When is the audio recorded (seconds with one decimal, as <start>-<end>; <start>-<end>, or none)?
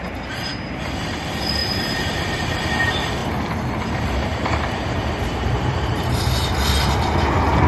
0.0-1.6; 2.7-4.3; 6.2-7.7